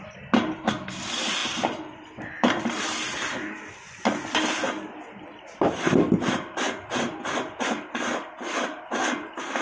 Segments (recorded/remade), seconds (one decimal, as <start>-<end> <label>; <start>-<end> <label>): 0.0-9.6 recorded